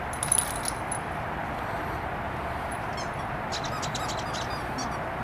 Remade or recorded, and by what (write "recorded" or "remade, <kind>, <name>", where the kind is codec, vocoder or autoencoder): recorded